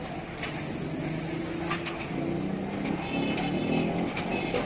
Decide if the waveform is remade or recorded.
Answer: recorded